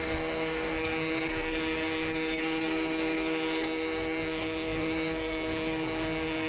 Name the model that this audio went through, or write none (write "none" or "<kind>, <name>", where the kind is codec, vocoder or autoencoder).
codec, SNAC